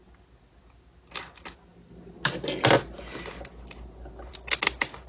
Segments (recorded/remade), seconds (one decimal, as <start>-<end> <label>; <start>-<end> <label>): 0.0-5.1 recorded